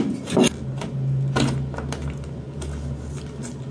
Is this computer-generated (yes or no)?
no